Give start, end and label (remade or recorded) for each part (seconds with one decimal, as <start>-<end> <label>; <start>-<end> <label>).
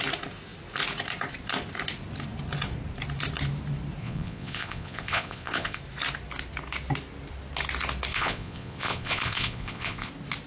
0.0-4.0 recorded; 4.0-5.8 remade; 5.8-8.1 recorded; 8.1-10.1 remade; 10.1-10.5 recorded